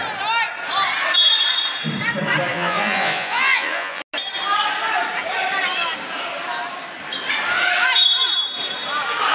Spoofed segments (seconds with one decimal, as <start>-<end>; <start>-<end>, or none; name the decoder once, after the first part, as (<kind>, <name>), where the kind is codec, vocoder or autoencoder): 2.5-4.0 (vocoder, Vocos)